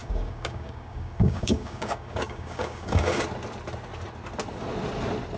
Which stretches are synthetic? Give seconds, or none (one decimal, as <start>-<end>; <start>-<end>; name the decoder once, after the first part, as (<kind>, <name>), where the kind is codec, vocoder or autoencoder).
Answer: 0.0-3.2 (codec, DAC)